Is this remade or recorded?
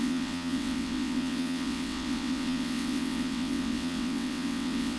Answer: remade